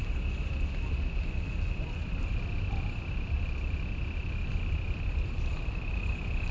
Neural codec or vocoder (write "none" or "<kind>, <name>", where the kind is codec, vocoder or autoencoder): none